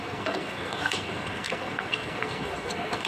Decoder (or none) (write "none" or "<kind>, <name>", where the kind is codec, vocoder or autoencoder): codec, SNAC